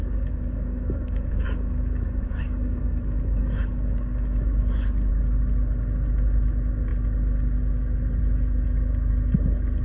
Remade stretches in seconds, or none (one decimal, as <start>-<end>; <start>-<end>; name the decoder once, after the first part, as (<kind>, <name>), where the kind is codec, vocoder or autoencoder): 0.0-5.1 (codec, DAC)